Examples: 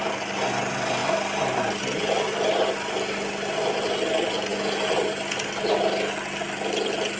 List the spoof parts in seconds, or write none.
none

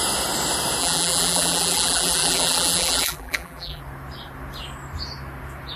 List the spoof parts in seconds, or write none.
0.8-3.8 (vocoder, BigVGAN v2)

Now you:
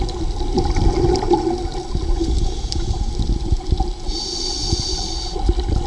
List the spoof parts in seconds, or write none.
none

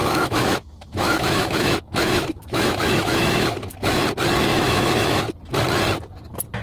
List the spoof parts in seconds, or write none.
0.0-4.0 (autoencoder, DAC-VAE); 4.5-5.2

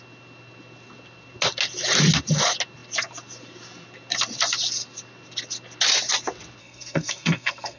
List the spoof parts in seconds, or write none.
6.6-7.8 (codec, SNAC)